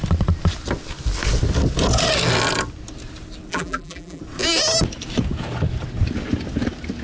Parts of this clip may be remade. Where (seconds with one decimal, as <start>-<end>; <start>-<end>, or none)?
3.5-4.2